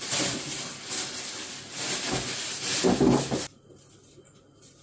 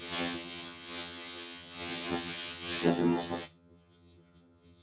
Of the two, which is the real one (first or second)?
first